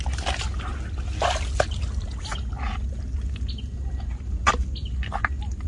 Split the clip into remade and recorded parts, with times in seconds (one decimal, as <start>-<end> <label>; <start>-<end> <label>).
0.0-5.7 recorded